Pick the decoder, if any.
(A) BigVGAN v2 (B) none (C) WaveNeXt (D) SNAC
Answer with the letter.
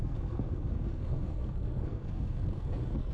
D